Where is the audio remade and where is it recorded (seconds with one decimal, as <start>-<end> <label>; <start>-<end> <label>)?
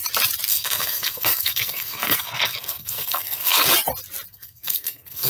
0.0-0.5 recorded; 0.5-3.7 remade; 3.7-4.3 recorded; 4.3-5.3 remade